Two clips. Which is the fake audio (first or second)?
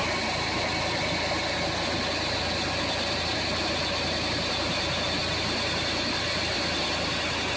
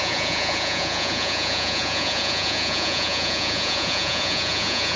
second